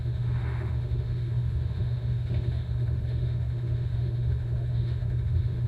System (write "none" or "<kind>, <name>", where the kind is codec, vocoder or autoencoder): autoencoder, DAC-VAE